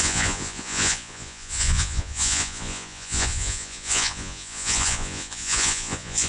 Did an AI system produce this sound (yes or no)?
yes